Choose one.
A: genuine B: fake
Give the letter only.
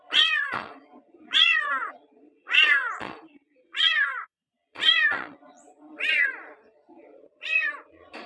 B